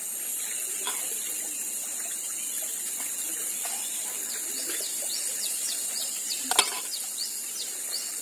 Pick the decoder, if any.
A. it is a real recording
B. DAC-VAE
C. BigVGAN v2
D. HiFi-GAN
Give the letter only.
A